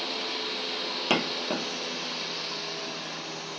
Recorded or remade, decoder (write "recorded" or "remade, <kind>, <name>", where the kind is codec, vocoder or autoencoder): recorded